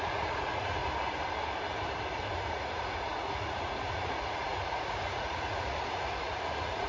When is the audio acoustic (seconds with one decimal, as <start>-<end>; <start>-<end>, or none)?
0.8-2.5